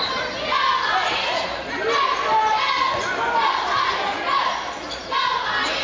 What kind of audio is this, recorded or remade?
recorded